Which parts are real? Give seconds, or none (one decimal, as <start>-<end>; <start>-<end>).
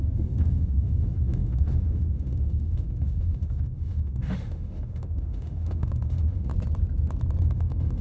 6.5-7.4